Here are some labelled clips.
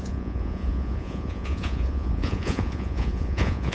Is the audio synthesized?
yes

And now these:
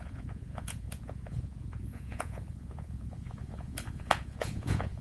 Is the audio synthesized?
yes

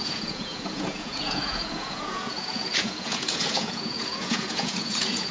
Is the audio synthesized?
yes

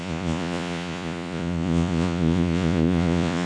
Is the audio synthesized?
yes